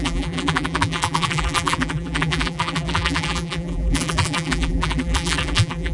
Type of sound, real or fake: fake